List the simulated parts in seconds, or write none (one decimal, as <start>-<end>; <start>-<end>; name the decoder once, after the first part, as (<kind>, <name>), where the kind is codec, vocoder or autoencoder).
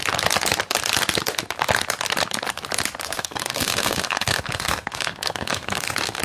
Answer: 3.0-6.2 (codec, SNAC)